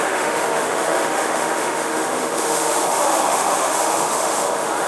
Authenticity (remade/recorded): remade